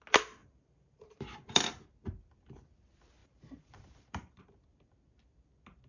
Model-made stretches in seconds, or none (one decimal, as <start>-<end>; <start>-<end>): 0.4-1.6; 3.2-4.4